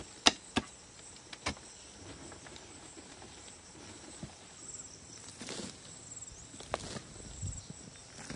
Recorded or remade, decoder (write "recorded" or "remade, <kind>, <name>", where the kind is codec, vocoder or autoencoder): recorded